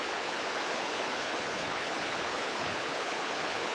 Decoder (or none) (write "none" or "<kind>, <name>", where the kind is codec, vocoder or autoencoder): codec, HILCodec